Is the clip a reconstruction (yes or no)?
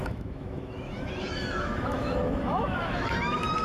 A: yes